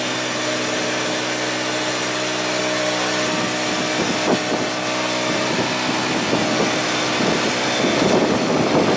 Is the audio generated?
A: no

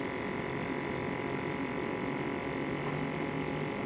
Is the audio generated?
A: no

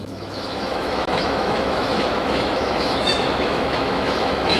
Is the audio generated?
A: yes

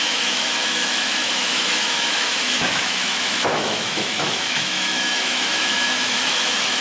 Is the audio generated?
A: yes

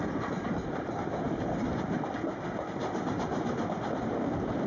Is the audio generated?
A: no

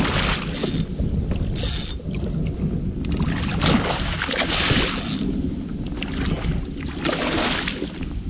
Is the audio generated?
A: no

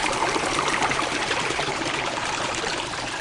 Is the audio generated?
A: yes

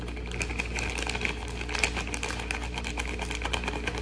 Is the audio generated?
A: no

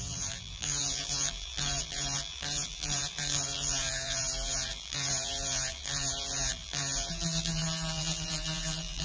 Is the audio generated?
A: yes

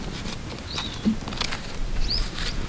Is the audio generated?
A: no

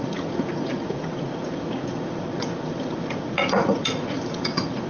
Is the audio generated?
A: yes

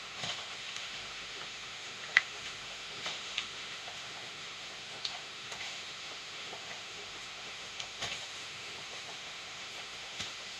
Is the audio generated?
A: yes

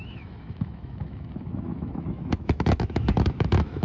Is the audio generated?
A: yes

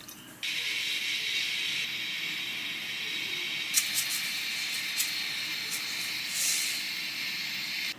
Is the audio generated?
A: no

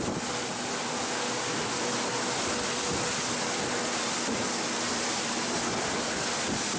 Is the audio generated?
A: no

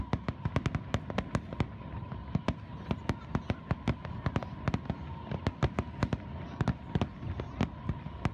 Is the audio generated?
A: no